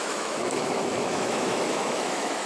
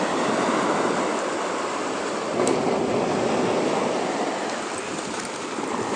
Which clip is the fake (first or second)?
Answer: first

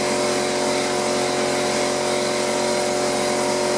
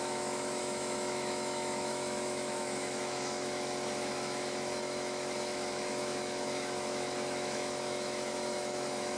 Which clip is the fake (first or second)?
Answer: second